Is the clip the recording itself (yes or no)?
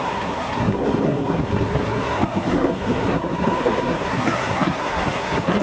no